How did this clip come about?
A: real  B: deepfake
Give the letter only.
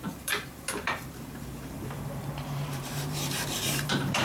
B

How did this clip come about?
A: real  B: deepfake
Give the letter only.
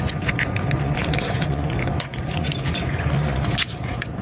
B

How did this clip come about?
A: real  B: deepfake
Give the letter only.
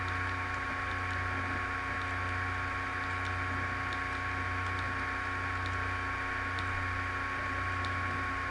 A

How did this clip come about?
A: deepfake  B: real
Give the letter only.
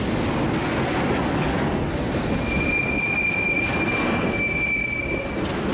B